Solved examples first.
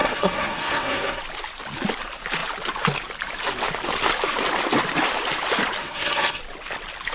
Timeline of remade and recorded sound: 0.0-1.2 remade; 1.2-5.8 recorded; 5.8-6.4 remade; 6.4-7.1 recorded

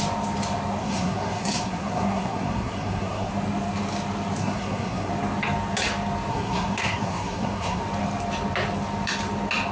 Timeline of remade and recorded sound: 0.0-0.8 recorded; 0.8-3.3 remade; 3.3-4.4 recorded; 4.4-5.1 remade; 5.1-6.3 recorded; 6.3-7.8 remade; 7.8-9.7 recorded

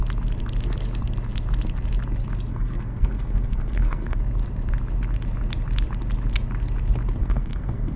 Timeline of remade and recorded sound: 0.0-2.5 recorded; 2.5-4.2 remade; 4.2-7.2 recorded; 7.2-8.0 remade

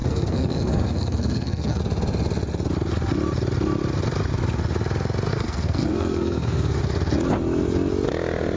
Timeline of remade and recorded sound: 0.0-1.8 remade; 1.8-5.3 recorded; 5.3-6.8 remade; 6.8-8.6 recorded

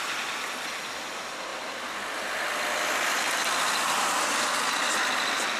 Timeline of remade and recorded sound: 0.0-5.6 recorded